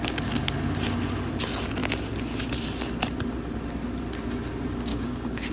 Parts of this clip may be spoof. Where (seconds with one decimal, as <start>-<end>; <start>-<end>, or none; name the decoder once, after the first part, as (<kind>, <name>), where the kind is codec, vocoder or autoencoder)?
4.9-5.5 (codec, DAC)